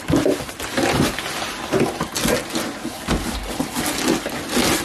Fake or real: real